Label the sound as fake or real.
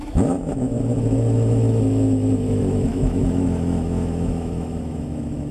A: fake